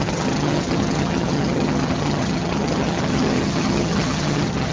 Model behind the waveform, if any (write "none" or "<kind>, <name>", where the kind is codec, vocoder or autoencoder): vocoder, HiFi-GAN